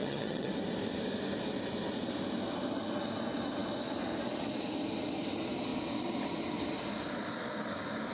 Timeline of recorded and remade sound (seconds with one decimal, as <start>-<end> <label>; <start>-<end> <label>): 0.0-0.5 remade; 0.5-8.1 recorded